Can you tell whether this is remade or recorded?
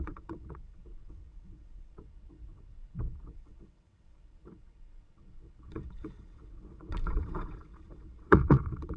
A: remade